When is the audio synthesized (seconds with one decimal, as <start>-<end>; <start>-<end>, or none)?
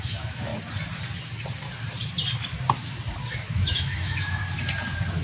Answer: 0.0-0.5; 3.3-4.4